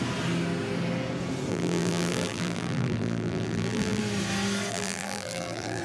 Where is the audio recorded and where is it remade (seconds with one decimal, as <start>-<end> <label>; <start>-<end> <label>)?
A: 0.0-1.5 recorded; 1.5-4.0 remade; 4.0-4.7 recorded; 4.7-5.8 remade